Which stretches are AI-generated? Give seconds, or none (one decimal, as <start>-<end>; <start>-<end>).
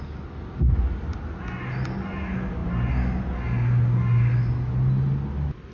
none